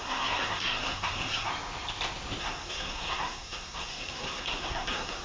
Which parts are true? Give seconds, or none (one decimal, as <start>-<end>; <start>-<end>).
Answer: 1.5-2.4